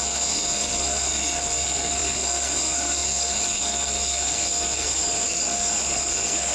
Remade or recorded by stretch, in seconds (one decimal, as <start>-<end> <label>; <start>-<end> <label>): 0.0-6.5 remade